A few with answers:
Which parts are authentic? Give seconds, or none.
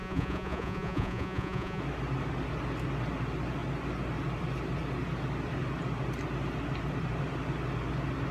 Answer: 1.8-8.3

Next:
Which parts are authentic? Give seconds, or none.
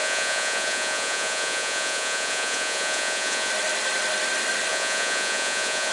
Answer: 3.5-4.7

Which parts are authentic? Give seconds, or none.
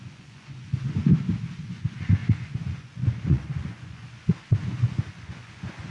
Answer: 1.1-1.6